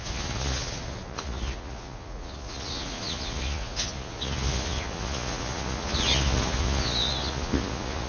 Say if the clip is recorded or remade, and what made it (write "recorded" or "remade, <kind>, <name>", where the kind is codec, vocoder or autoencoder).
remade, vocoder, Vocos